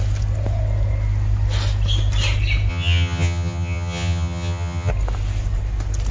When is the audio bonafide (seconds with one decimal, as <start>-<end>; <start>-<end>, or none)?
0.0-2.7; 4.9-6.1